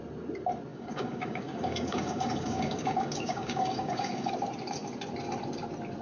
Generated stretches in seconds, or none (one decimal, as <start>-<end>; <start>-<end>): 0.7-4.3